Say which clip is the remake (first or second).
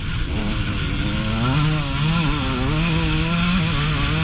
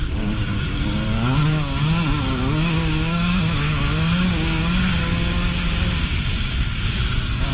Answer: second